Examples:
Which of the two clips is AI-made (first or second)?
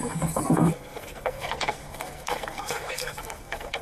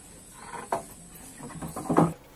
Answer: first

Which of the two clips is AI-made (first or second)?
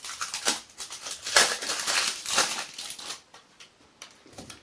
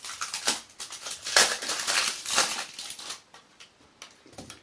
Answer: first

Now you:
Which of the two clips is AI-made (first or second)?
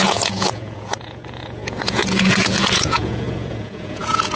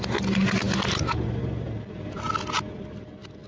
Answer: first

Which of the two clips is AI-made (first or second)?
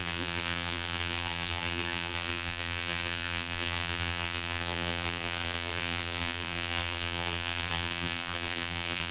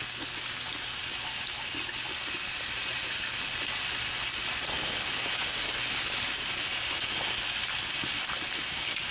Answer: first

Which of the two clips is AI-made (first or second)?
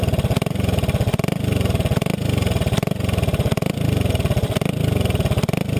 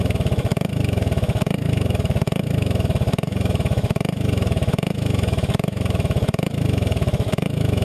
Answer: second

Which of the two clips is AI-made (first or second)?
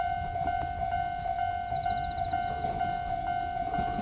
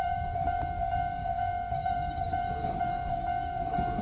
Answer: second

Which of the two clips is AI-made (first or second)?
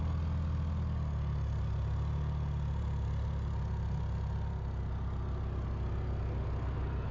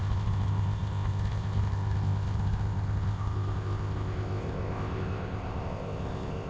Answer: second